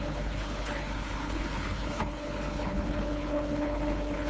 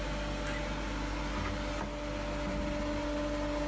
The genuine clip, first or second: second